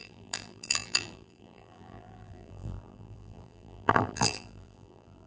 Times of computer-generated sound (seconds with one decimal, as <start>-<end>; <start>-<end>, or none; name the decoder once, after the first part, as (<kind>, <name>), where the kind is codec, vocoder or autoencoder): 0.0-5.3 (vocoder, BigVGAN v2)